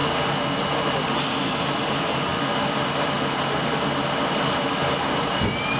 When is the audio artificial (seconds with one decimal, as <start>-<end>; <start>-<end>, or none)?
none